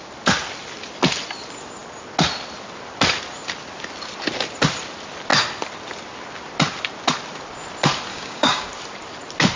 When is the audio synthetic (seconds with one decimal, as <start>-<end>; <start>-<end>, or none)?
8.1-8.7